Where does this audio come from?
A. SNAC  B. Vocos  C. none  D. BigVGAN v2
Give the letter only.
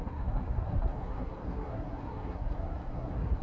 A